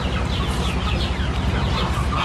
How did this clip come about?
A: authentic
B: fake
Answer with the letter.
A